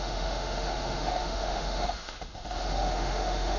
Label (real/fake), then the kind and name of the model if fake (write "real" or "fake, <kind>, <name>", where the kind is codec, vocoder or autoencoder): fake, autoencoder, DAC-VAE